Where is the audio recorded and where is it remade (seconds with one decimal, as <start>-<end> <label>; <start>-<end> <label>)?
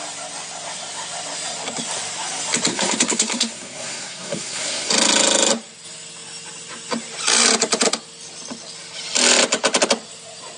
0.0-2.7 recorded; 2.7-4.9 remade; 4.9-10.6 recorded